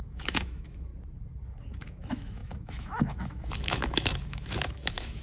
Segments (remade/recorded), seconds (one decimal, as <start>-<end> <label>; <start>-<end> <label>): 0.0-0.9 remade; 0.9-1.7 recorded; 1.7-5.2 remade